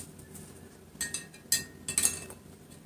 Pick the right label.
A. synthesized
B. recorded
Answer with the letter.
B